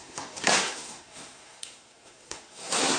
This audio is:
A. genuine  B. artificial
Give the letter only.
B